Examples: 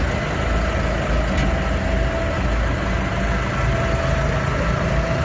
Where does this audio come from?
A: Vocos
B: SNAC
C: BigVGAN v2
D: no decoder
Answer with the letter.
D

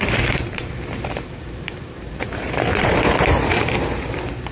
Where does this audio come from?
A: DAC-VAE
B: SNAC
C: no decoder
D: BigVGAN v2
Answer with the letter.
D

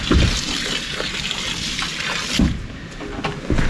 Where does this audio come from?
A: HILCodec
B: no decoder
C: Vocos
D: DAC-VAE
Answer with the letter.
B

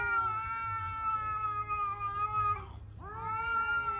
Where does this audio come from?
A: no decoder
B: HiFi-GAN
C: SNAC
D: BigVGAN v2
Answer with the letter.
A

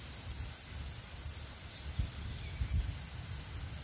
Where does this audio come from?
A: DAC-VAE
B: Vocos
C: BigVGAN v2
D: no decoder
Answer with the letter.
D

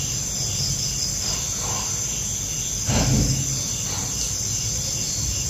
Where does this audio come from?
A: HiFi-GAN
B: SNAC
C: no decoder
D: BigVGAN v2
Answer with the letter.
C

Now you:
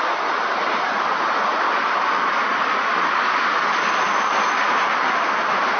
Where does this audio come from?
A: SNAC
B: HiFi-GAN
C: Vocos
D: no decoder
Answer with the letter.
D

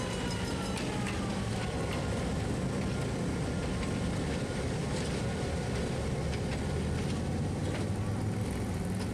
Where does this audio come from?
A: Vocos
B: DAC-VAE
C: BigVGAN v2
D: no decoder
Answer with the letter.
D